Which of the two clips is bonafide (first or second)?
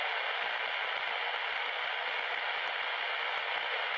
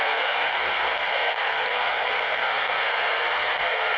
first